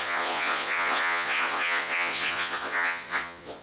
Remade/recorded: remade